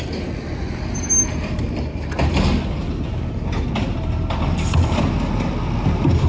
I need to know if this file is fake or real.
real